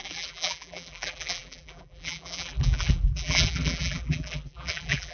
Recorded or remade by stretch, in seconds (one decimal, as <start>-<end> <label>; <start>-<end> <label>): 0.0-5.1 remade